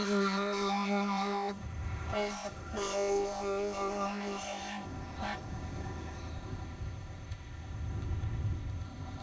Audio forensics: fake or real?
fake